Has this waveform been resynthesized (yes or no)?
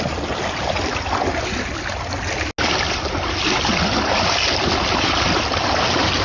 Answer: no